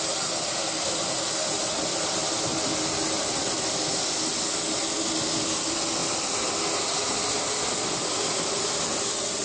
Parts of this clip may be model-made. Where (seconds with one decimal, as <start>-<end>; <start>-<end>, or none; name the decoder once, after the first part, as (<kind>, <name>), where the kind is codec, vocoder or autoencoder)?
none